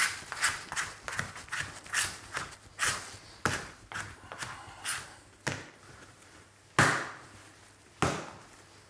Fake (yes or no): no